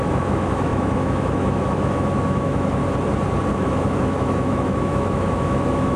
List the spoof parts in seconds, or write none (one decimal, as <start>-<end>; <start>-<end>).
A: 0.0-2.8; 3.5-6.0